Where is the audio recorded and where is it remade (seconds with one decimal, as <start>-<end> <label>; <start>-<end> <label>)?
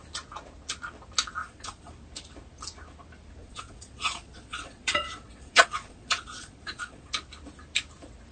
0.0-1.4 recorded; 1.4-1.9 remade; 1.9-3.4 recorded; 3.4-7.1 remade; 7.1-8.3 recorded